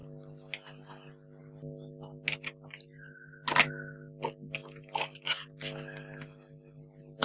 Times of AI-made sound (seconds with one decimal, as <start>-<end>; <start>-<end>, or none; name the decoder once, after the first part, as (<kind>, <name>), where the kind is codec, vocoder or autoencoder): none